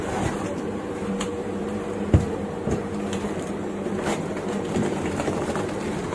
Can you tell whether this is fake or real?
fake